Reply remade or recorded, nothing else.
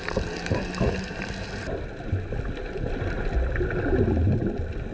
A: recorded